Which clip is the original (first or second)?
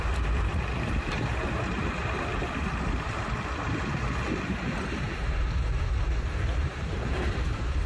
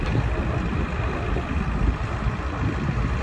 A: second